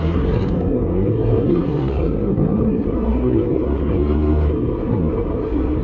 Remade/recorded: remade